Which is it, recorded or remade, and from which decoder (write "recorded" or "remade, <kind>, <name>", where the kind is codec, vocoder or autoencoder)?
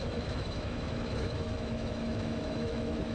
remade, autoencoder, DAC-VAE